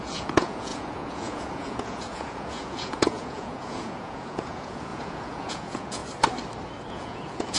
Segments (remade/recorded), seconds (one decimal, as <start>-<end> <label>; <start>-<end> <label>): 0.0-6.0 remade; 6.0-6.9 recorded; 6.9-7.6 remade